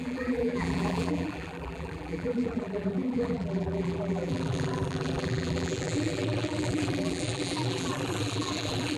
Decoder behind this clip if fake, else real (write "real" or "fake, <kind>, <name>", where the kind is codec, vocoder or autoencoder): fake, vocoder, BigVGAN v2